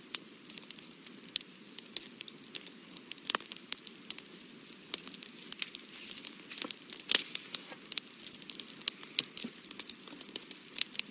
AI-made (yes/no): no